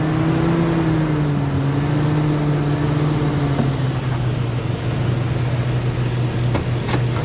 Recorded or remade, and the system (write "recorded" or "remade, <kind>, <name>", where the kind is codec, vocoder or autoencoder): recorded